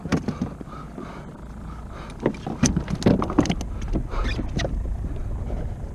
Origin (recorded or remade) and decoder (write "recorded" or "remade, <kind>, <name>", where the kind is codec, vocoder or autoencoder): recorded